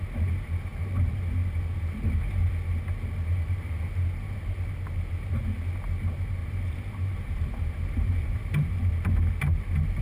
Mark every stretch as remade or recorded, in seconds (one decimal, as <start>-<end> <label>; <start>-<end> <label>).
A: 0.0-6.4 recorded; 6.4-8.9 remade; 8.9-10.0 recorded